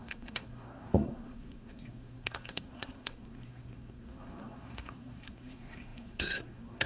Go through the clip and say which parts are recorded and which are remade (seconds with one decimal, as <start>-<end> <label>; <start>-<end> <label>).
0.0-6.9 remade